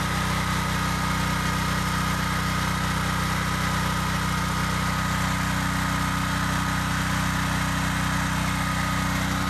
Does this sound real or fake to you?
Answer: real